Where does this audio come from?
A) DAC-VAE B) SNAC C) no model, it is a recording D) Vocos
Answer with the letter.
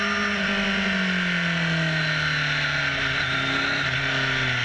C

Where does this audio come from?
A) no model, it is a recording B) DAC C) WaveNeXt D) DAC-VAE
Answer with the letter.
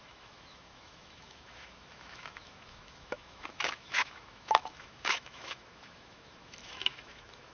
D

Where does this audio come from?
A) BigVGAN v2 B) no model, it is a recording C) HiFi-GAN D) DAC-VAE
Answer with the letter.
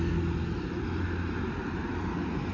B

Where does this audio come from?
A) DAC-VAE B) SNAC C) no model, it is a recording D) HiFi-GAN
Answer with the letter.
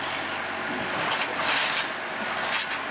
C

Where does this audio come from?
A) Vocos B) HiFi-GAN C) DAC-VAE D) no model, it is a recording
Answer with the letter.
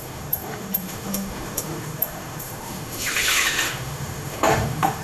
C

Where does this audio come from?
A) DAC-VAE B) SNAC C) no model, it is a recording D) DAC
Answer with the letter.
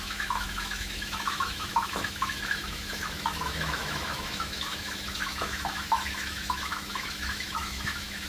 A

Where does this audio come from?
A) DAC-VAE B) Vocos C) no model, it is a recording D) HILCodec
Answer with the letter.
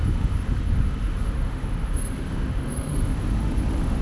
A